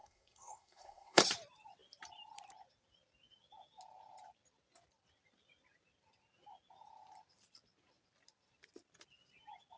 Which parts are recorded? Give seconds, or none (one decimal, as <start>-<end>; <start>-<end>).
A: 1.2-9.8